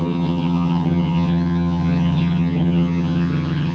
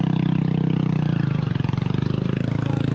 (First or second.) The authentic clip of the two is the second